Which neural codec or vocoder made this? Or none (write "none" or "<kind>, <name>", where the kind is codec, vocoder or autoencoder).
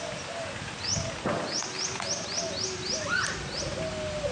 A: none